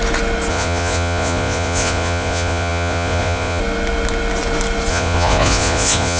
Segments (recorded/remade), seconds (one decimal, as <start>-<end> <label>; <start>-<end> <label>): 0.0-0.5 recorded; 0.5-3.6 remade; 3.6-4.9 recorded; 4.9-6.2 remade